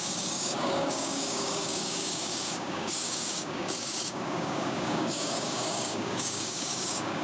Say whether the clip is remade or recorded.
remade